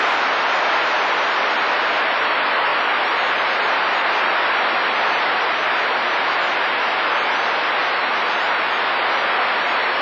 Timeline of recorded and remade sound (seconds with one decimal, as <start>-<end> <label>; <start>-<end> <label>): 0.0-10.0 recorded